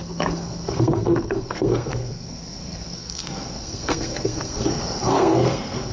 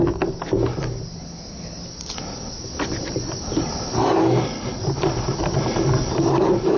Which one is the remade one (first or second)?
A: first